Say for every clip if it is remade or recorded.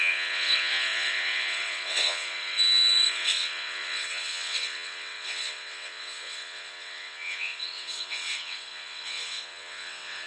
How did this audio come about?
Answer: remade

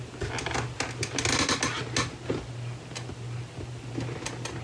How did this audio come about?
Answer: recorded